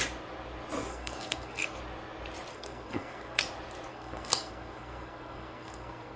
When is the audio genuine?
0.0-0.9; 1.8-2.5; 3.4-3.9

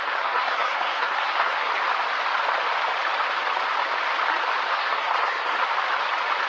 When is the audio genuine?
1.7-4.7; 5.6-6.5